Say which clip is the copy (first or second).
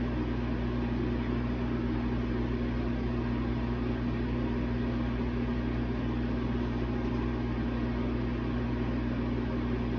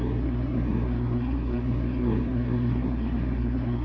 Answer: second